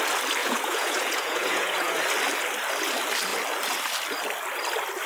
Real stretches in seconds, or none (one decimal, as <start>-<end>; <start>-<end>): 0.0-0.4; 2.0-5.1